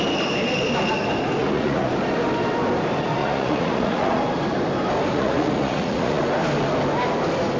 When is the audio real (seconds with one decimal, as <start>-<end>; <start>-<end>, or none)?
0.0-1.4; 1.9-3.2; 4.2-5.1; 6.2-7.6